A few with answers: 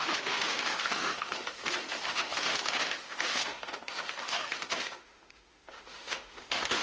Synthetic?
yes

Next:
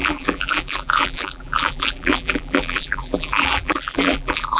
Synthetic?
yes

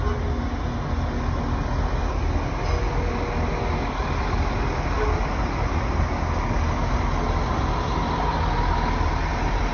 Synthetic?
no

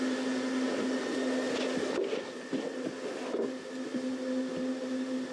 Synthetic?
no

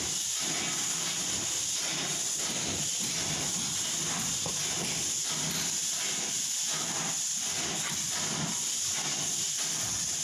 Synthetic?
no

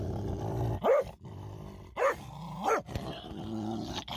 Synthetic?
no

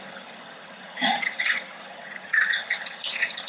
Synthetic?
yes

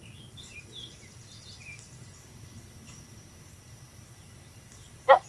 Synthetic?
yes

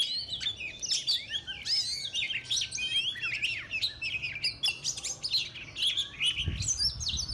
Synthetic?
no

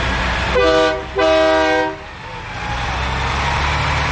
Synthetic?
no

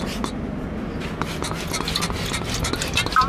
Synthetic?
no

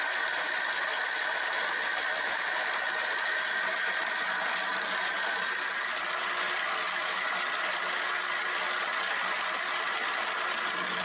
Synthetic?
no